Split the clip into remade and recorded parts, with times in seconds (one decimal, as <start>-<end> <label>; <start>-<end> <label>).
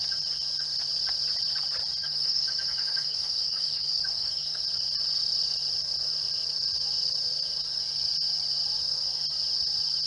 0.0-2.0 recorded; 2.0-4.6 remade; 4.6-10.1 recorded